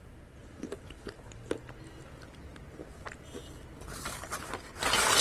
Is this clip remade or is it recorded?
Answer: recorded